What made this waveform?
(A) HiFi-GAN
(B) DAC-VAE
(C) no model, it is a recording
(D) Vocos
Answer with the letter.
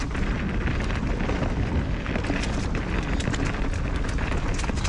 C